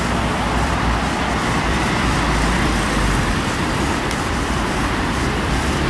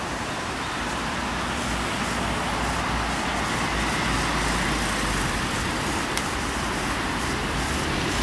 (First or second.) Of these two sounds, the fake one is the first